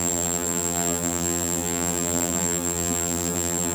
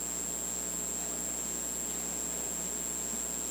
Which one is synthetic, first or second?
first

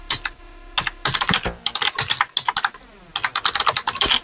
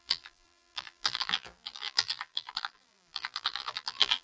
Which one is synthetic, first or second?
second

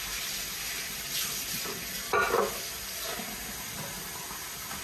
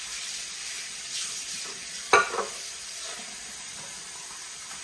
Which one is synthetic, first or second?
second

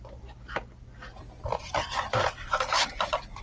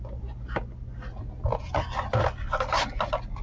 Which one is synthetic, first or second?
first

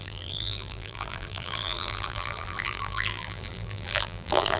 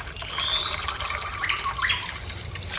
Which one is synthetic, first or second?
first